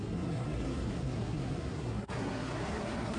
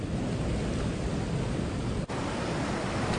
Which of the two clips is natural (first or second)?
second